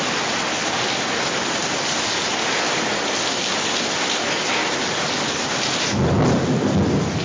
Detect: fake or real real